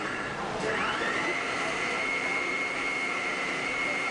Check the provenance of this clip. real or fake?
fake